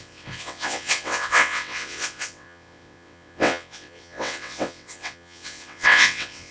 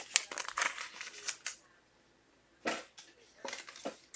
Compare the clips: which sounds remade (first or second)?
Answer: first